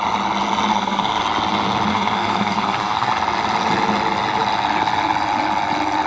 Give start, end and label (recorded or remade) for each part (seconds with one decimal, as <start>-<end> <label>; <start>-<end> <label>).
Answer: 0.0-0.7 recorded; 0.7-1.2 remade; 1.2-1.9 recorded; 1.9-3.1 remade; 3.1-6.1 recorded